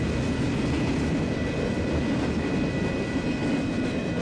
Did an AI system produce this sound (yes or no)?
no